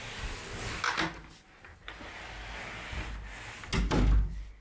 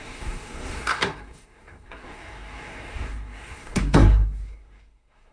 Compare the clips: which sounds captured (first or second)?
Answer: first